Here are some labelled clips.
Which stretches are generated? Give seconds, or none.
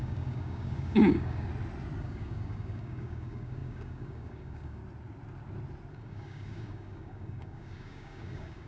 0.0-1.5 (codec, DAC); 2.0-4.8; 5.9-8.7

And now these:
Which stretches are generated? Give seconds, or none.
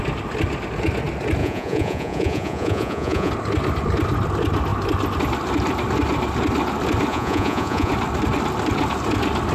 1.4-3.3 (vocoder, Vocos); 7.1-7.9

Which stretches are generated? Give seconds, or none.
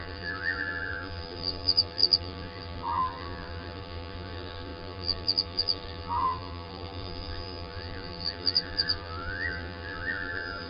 0.0-10.7 (vocoder, BigVGAN v2)